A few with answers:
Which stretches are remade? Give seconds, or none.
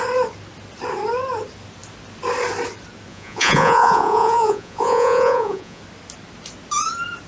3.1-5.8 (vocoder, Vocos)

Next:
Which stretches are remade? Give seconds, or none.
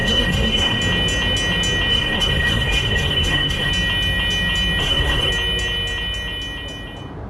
0.0-0.8 (codec, SNAC); 1.9-3.7; 4.8-5.3